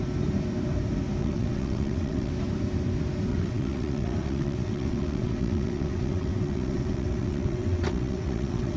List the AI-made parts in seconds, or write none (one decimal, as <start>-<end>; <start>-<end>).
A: 1.2-2.3; 3.3-8.8